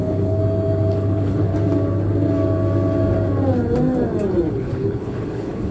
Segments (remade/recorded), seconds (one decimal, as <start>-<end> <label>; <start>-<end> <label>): 0.0-0.4 remade; 0.4-0.9 recorded; 0.9-1.5 remade; 1.5-4.5 recorded; 4.5-5.7 remade